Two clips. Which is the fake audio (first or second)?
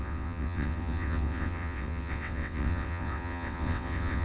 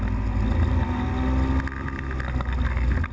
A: first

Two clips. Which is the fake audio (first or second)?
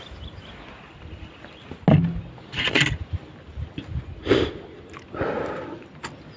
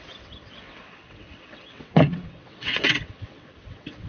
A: second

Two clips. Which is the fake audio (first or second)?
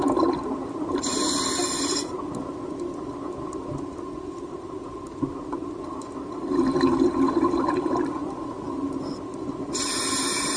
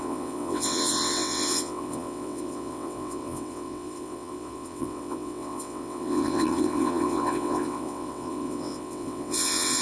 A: second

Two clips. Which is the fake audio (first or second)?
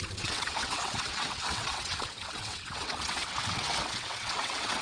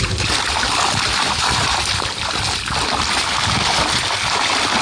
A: first